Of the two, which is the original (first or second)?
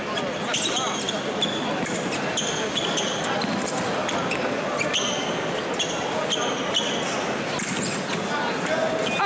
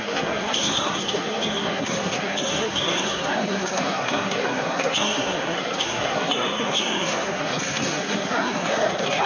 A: first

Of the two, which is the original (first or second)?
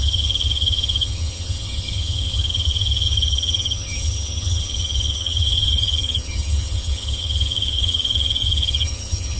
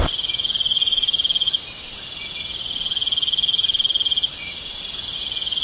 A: second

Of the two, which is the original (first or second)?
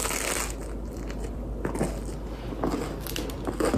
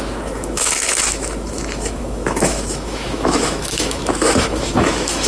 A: first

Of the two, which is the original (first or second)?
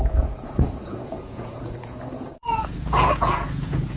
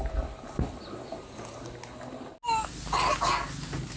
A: second